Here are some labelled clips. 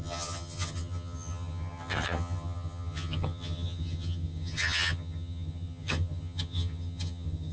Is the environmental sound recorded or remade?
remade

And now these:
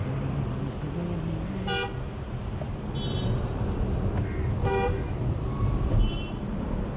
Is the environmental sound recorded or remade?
recorded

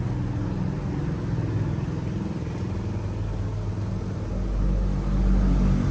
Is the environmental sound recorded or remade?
recorded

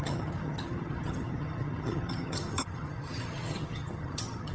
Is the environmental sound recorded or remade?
remade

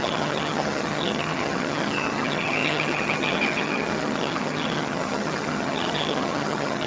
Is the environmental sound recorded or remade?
remade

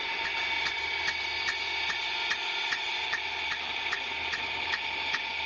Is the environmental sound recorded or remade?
recorded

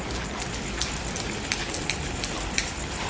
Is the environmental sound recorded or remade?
recorded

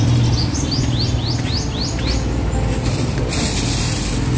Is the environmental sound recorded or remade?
recorded